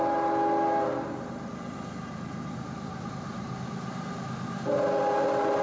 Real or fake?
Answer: real